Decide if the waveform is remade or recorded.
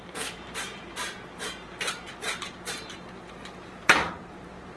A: remade